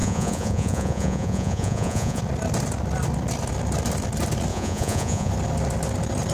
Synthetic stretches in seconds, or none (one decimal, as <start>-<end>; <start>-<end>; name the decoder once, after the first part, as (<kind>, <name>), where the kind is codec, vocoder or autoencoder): 0.0-2.2 (vocoder, Vocos); 4.5-5.3

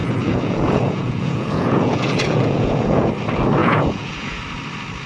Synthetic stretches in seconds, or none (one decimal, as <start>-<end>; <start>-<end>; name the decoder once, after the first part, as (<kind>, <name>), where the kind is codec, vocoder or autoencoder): 0.0-3.1 (vocoder, Vocos); 3.6-4.4

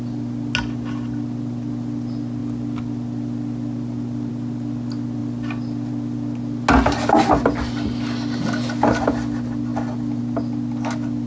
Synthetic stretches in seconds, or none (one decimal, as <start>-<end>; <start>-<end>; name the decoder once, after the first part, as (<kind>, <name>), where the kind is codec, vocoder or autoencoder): none

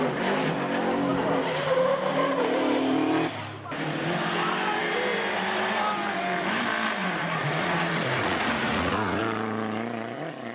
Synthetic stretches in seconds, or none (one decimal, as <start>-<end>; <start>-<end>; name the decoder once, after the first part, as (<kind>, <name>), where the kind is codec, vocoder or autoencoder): 7.0-9.2 (vocoder, Vocos)